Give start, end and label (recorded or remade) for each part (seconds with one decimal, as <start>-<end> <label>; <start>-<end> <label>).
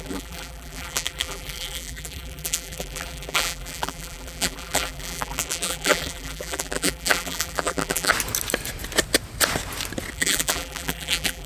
0.0-8.1 remade; 8.1-10.1 recorded; 10.1-11.5 remade